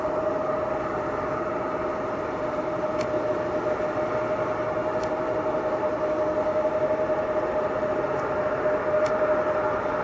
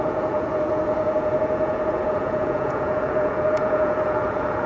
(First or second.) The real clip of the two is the first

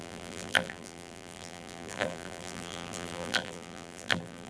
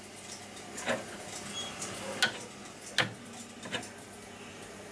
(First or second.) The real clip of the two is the second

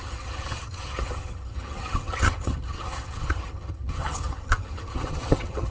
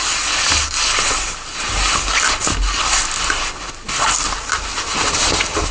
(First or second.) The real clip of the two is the second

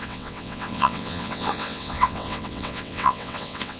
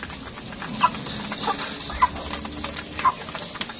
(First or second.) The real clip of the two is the second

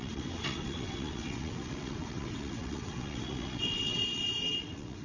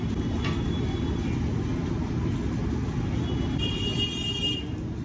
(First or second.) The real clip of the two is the second